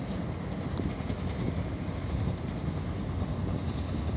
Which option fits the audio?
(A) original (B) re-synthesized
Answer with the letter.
A